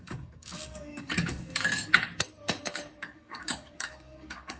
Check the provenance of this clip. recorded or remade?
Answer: remade